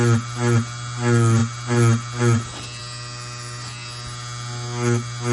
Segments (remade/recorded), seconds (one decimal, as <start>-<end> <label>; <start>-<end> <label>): 0.0-5.3 recorded